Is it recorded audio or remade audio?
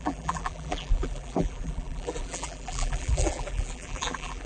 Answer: remade